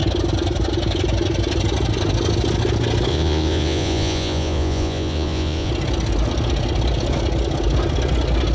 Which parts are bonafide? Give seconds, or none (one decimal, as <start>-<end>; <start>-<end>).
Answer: 0.0-3.1; 5.7-8.5